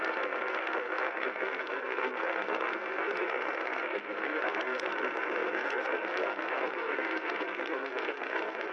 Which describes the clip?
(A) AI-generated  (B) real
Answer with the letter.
A